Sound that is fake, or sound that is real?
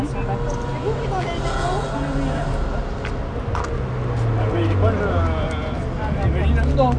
real